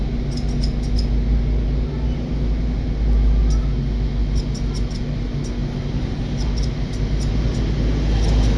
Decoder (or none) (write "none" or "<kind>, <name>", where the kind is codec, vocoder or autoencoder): none